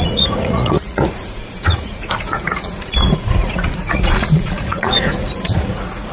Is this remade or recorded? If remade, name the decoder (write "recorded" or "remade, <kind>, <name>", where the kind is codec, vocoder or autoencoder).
remade, vocoder, Vocos